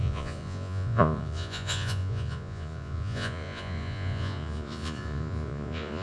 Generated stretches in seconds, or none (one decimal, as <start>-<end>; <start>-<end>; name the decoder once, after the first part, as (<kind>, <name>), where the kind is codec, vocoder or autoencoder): 0.0-6.0 (vocoder, Vocos)